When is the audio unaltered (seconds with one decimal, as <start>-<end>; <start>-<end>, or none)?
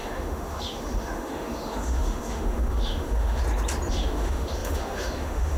3.4-3.9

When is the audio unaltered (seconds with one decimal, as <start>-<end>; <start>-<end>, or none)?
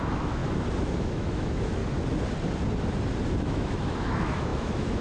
0.4-1.0; 1.8-3.4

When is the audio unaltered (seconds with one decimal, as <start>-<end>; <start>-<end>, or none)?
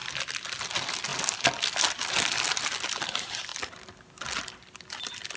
0.0-5.4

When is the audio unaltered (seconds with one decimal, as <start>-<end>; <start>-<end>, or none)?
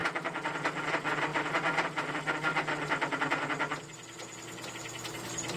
0.0-5.6